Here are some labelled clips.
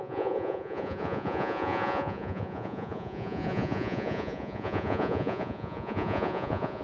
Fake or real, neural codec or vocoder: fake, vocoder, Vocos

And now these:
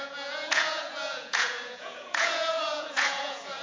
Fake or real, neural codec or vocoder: fake, vocoder, Vocos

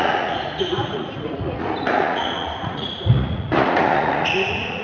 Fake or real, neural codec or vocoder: fake, vocoder, Vocos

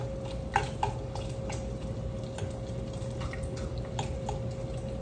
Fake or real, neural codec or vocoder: real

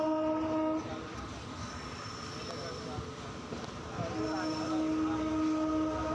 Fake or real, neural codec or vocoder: real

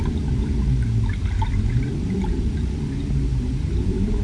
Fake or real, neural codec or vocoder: real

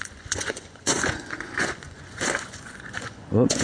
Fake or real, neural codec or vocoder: fake, vocoder, Vocos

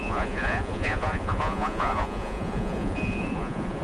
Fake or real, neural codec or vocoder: fake, vocoder, Vocos